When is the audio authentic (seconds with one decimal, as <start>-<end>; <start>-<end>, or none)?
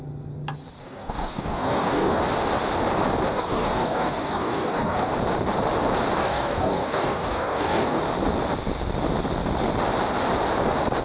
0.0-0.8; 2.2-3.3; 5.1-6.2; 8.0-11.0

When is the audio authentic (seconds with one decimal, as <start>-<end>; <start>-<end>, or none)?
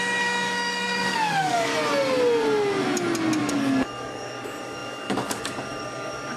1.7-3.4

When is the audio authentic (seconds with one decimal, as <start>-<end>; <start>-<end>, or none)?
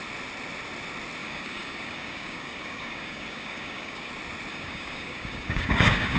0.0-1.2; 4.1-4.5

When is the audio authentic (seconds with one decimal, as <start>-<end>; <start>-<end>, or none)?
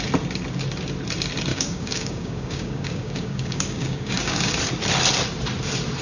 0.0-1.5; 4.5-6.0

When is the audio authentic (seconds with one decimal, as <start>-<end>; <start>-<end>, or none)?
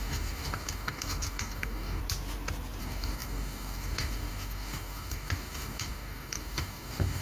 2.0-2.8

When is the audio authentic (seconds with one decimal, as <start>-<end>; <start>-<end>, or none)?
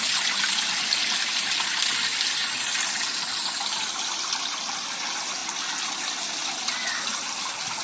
0.0-7.8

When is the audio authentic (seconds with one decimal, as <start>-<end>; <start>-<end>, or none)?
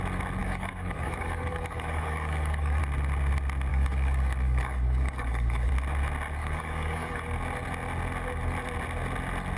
0.0-0.4; 2.8-3.7; 5.7-6.4; 7.2-9.6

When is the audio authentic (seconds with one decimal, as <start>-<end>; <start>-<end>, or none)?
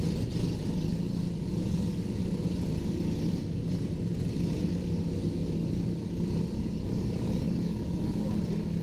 0.0-0.9; 2.1-6.9; 8.4-8.8